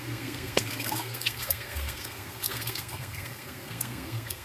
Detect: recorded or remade remade